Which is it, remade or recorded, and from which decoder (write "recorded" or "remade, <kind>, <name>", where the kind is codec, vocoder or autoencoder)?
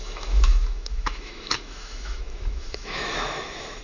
remade, autoencoder, DAC-VAE